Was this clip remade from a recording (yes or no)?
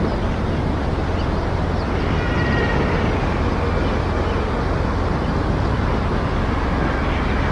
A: no